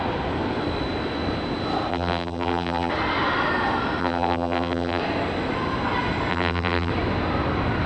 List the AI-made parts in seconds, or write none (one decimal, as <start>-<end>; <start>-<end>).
1.9-2.9; 4.0-5.0; 6.3-6.9

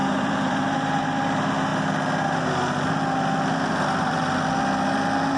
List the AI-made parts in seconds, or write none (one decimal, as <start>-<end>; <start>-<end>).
0.0-1.0

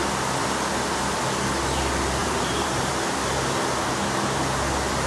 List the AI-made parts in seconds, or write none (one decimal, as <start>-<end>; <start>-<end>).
2.2-2.9

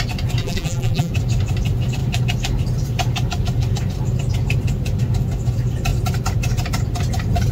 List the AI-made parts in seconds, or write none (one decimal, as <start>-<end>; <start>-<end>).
0.4-1.1

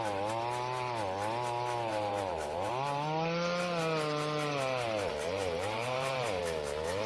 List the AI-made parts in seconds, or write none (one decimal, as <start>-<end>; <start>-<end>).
1.9-2.7; 5.1-6.4